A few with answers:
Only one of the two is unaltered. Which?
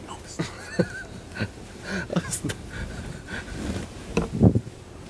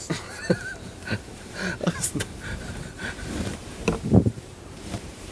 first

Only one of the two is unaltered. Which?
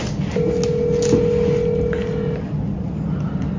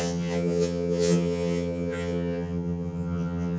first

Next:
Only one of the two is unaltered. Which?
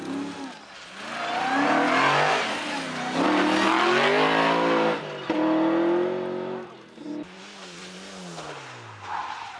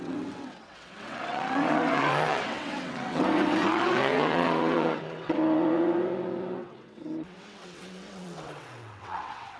first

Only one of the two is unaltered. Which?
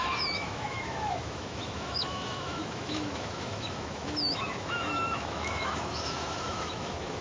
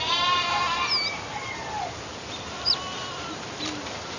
second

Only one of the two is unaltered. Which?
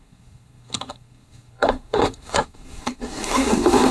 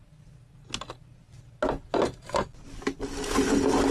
second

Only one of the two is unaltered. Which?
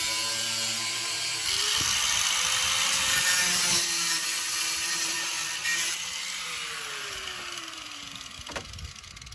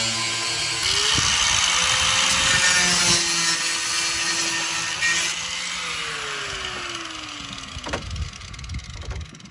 second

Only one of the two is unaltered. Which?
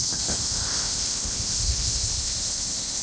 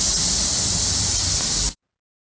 second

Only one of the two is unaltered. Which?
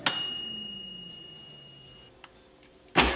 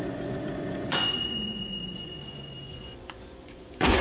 first